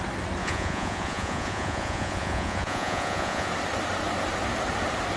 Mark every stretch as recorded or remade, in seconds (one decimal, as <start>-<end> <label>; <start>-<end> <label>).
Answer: 0.0-0.4 recorded; 0.4-3.5 remade; 3.5-5.2 recorded